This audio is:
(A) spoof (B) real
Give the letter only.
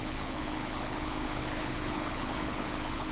A